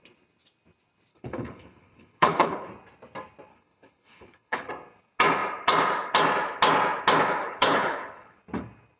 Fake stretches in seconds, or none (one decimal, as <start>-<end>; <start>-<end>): 1.1-2.7; 3.5-4.7; 7.4-8.4